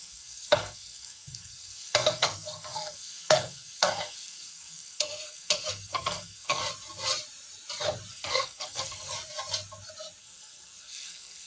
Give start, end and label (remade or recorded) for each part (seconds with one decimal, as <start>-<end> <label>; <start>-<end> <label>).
0.0-6.6 remade; 6.6-8.1 recorded; 8.1-9.1 remade; 9.1-10.2 recorded; 10.2-11.5 remade